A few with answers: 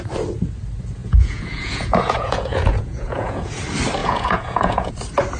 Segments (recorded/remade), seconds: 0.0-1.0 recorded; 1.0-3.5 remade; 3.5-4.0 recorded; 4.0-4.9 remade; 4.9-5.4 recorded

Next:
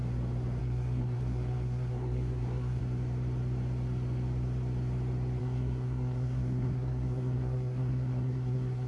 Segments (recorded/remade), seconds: 0.0-0.6 recorded; 0.6-2.8 remade; 2.8-5.4 recorded; 5.4-8.9 remade

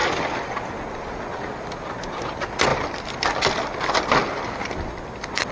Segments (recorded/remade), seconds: 0.0-5.5 recorded

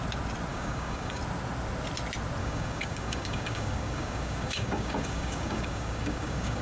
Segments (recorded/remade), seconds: 0.0-0.5 recorded; 0.5-1.2 remade; 1.2-2.4 recorded; 2.4-6.6 remade